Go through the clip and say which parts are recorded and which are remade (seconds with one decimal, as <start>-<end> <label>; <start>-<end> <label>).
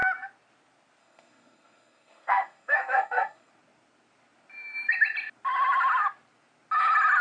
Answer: 0.0-1.0 recorded; 1.0-3.5 remade; 3.5-7.2 recorded